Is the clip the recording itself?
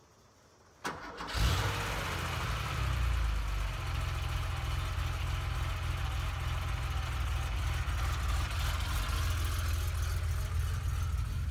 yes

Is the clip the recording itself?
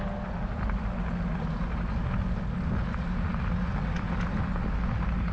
yes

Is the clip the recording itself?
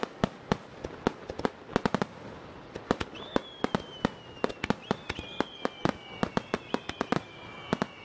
yes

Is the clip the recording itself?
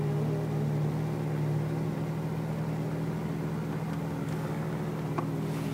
yes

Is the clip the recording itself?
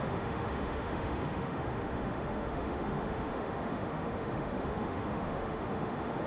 no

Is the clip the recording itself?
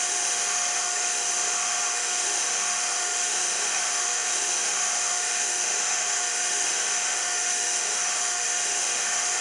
no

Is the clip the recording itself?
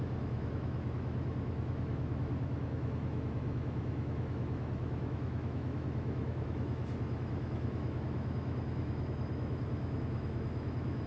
no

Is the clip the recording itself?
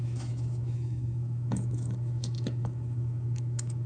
no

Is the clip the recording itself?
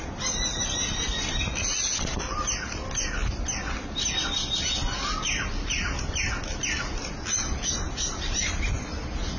yes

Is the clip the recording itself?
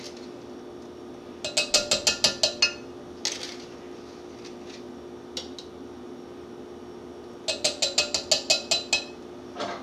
yes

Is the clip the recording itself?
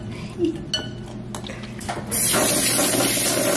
yes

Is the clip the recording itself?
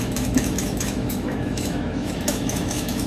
no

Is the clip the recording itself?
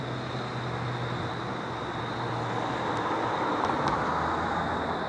yes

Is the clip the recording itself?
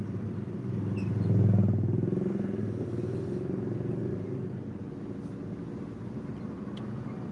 yes